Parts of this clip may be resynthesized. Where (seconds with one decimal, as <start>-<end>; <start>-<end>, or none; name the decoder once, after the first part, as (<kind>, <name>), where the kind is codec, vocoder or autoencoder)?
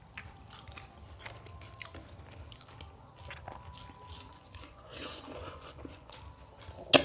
4.3-6.2 (vocoder, Vocos)